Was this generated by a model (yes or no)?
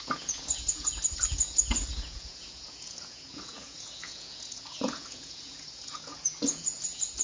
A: yes